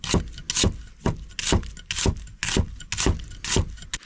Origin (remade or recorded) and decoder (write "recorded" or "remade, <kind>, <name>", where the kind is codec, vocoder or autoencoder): recorded